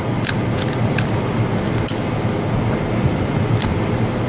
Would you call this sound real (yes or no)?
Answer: yes